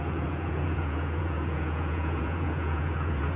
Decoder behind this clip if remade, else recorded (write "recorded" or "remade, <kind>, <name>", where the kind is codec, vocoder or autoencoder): remade, vocoder, Vocos